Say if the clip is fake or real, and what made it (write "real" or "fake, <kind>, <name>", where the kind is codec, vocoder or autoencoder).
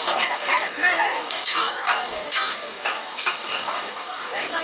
fake, codec, DAC